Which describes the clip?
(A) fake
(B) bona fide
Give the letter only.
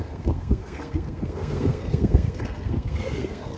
A